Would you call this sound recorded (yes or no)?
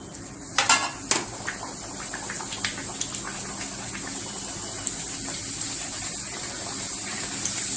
yes